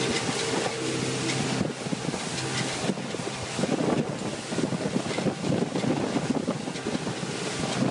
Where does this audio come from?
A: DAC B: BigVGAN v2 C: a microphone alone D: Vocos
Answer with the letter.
C